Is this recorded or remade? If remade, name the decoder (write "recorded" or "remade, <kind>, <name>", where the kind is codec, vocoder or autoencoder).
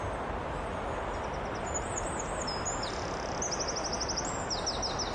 recorded